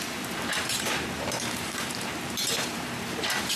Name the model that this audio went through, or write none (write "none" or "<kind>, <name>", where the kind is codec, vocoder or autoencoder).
vocoder, BigVGAN v2